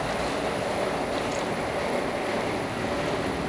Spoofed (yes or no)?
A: no